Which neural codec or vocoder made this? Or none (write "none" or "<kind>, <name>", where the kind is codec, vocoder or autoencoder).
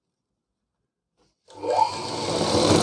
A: none